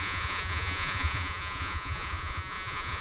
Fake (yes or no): yes